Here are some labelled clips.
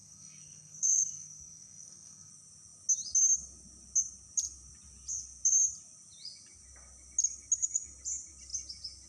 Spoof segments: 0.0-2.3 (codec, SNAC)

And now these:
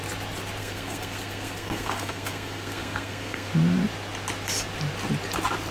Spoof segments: 0.6-3.5 (codec, SNAC)

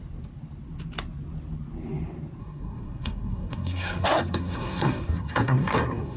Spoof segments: 2.4-6.2 (codec, SNAC)

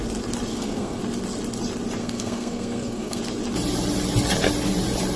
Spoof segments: 0.5-1.0 (codec, SNAC); 2.0-3.2

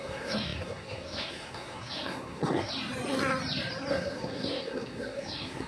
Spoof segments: 0.0-2.7 (codec, SNAC); 3.9-5.7

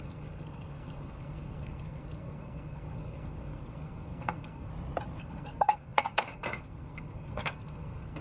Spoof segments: 0.0-4.7 (codec, SNAC); 5.2-8.2